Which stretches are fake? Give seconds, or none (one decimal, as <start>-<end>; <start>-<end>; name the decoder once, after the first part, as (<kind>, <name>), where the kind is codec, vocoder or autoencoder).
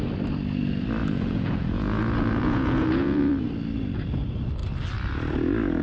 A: 1.0-3.3 (vocoder, Vocos)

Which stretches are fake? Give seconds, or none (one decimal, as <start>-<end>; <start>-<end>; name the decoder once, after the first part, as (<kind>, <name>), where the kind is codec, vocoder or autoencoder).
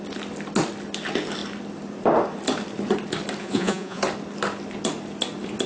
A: 3.4-4.0 (vocoder, Vocos)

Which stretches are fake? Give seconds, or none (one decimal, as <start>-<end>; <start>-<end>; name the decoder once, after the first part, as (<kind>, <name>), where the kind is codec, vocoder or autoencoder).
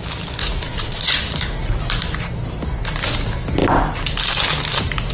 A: 0.4-1.2 (vocoder, Vocos)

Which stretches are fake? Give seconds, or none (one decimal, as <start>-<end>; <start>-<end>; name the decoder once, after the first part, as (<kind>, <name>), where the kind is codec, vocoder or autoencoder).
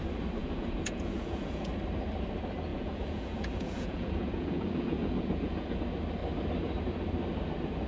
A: 0.4-1.7 (vocoder, Vocos); 2.7-5.8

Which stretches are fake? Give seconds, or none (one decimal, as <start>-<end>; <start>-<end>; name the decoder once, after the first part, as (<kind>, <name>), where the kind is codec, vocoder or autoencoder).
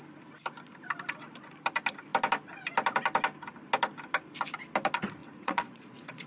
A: 5.2-6.3 (vocoder, Vocos)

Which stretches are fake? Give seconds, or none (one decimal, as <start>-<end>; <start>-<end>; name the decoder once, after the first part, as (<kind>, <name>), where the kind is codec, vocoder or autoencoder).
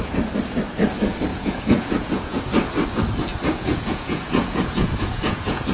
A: 1.3-2.4 (vocoder, Vocos); 3.3-5.7